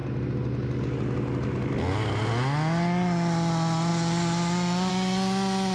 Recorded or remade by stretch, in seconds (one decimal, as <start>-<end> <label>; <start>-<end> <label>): 0.0-5.7 recorded